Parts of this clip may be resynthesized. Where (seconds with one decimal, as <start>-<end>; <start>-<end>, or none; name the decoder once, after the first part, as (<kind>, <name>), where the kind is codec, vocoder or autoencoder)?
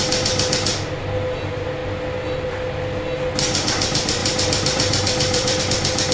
4.2-5.6 (vocoder, BigVGAN v2)